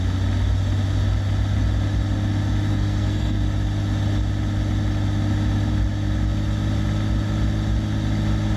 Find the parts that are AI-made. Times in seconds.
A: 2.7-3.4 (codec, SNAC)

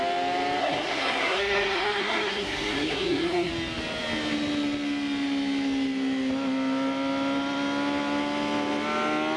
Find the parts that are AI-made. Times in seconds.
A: 0.6-3.5 (codec, SNAC)

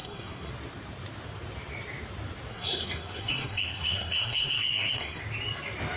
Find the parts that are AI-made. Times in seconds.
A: 0.0-0.5 (codec, SNAC); 2.5-5.2